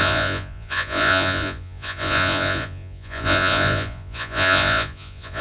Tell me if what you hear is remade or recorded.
remade